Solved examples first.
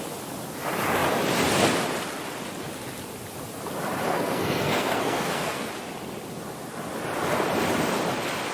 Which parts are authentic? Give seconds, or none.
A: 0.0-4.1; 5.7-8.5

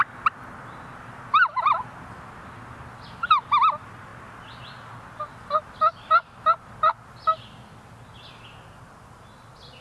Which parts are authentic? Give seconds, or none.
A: 0.0-9.8

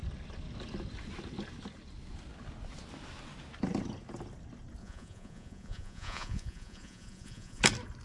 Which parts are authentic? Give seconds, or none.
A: 0.0-4.8; 7.6-8.0

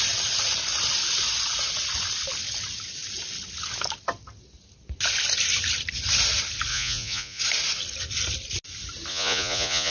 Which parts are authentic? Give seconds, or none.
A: 0.0-6.7; 7.4-9.1

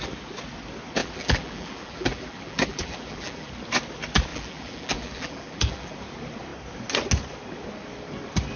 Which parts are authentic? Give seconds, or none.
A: 0.0-1.0; 3.5-4.3; 5.9-8.6

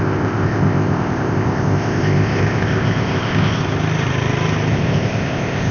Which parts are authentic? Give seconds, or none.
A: 3.6-4.7

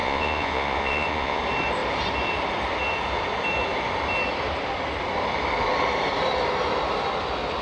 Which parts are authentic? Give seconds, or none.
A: 1.4-7.6